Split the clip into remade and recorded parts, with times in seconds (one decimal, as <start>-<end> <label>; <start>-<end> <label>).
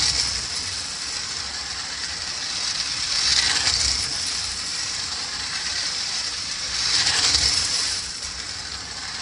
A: 0.0-4.7 recorded; 4.7-8.3 remade; 8.3-9.2 recorded